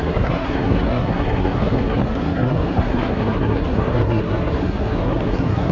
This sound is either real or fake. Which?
fake